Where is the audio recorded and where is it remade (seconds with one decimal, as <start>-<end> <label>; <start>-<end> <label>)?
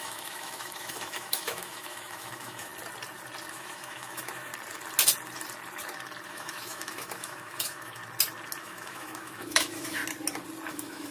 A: 0.0-2.7 remade; 2.7-3.5 recorded; 3.5-4.5 remade; 4.5-6.3 recorded; 6.3-8.0 remade; 8.0-8.6 recorded; 8.6-10.0 remade; 10.0-10.7 recorded; 10.7-11.1 remade